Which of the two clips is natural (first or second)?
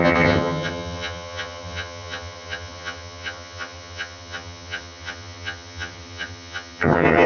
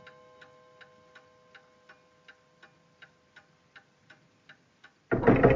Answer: second